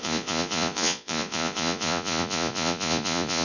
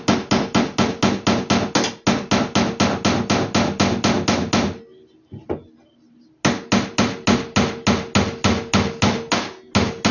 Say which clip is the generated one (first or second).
first